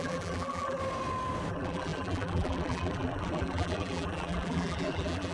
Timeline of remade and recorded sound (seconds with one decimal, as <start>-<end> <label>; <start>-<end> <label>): 0.0-0.8 remade; 0.8-1.5 recorded; 1.5-5.3 remade